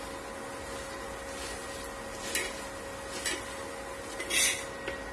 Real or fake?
real